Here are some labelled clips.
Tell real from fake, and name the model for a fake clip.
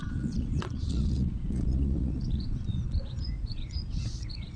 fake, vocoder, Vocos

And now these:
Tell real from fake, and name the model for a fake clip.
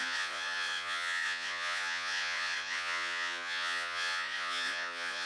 fake, vocoder, Vocos